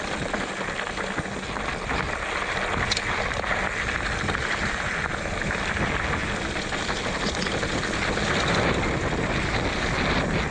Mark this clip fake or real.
real